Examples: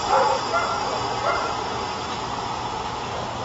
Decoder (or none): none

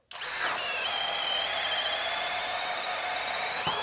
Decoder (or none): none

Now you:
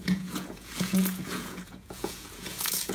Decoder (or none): vocoder, Vocos